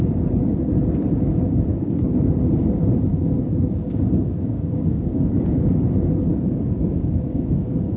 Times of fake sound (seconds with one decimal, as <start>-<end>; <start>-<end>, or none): 1.7-2.2; 3.1-5.7; 6.3-8.0

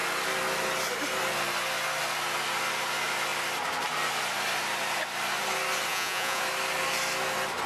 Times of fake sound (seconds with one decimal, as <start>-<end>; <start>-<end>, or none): 5.9-6.4

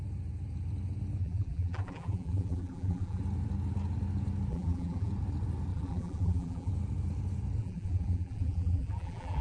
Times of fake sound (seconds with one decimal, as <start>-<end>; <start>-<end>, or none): 1.2-3.2; 4.5-5.1; 5.7-6.7; 7.6-9.4